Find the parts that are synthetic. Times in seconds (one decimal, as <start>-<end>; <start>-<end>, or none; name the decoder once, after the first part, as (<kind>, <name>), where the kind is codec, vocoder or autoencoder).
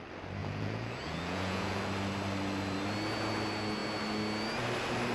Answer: 0.4-1.8 (vocoder, Vocos)